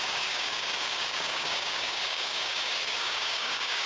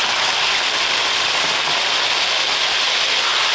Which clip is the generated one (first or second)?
first